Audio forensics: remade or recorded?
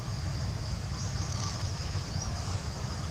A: remade